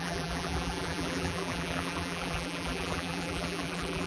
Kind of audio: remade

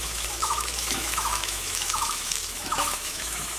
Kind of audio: remade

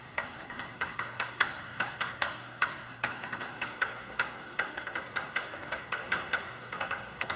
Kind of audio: remade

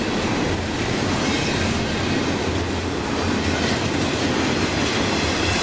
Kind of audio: recorded